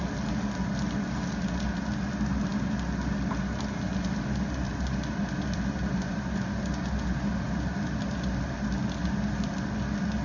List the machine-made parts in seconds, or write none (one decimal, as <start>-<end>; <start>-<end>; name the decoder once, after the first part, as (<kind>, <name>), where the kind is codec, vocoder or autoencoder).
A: none

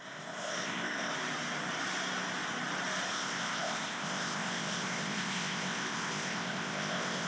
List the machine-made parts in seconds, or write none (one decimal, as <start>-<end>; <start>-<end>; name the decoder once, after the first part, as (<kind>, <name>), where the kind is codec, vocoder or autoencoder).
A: 0.0-1.1 (codec, ZipCodec); 3.1-7.3

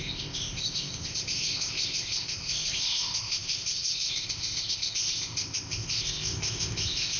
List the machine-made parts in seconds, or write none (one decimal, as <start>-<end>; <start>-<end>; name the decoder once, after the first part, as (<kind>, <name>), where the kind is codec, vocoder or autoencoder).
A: 0.0-7.2 (codec, ZipCodec)

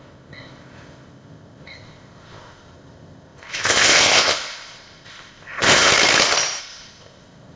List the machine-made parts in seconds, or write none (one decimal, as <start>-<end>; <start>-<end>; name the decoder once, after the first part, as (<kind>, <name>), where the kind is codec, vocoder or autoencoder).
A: 0.0-5.9 (codec, ZipCodec); 6.6-7.6

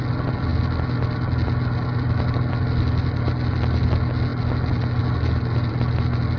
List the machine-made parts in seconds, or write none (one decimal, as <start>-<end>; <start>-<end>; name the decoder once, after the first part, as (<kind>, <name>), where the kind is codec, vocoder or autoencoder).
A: none